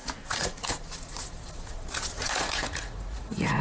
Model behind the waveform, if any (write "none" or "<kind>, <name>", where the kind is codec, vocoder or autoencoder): vocoder, Vocos